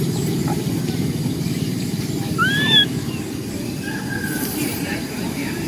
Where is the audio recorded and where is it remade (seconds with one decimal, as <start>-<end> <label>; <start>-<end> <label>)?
0.0-0.8 remade; 0.8-1.4 recorded; 1.4-2.8 remade; 2.8-4.4 recorded; 4.4-5.7 remade